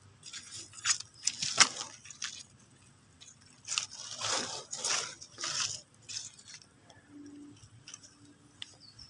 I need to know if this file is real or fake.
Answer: real